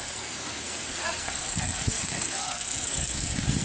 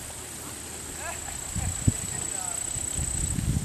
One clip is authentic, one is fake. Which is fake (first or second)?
first